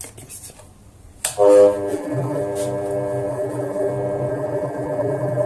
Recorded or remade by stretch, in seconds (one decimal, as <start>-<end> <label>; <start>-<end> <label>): 0.0-1.9 recorded; 1.9-2.4 remade; 2.4-3.3 recorded; 3.3-3.9 remade; 3.9-4.3 recorded; 4.3-5.5 remade